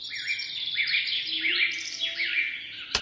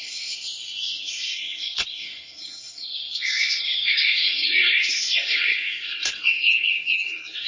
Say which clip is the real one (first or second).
first